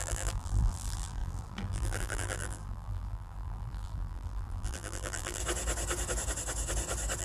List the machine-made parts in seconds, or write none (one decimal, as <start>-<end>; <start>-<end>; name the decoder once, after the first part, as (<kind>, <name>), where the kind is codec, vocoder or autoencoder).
0.0-5.4 (vocoder, BigVGAN v2)